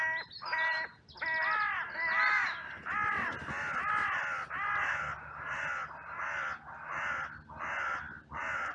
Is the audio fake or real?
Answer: real